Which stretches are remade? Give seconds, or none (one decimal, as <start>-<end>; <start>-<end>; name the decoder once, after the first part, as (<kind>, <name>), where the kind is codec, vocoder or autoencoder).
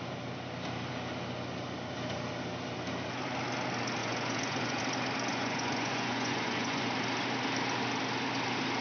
4.0-4.8 (vocoder, Vocos); 5.3-6.9